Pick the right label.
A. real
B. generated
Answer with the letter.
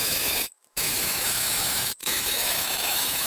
B